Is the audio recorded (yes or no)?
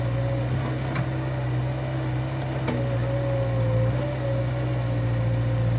yes